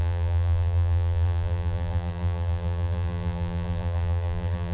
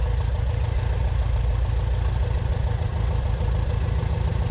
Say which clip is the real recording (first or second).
second